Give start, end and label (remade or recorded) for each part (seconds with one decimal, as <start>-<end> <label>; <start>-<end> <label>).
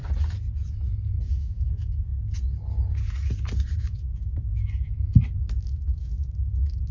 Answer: 0.0-1.3 recorded; 1.3-2.1 remade; 2.1-3.8 recorded; 3.8-5.1 remade; 5.1-5.6 recorded; 5.6-6.9 remade